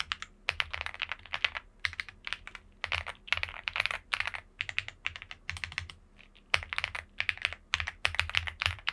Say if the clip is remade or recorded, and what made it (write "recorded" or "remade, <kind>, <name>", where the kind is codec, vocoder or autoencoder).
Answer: recorded